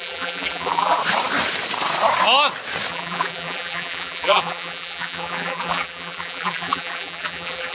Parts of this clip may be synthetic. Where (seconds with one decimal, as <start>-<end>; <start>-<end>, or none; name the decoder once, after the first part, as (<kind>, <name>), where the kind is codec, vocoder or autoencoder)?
0.0-1.0 (vocoder, BigVGAN v2); 2.9-7.7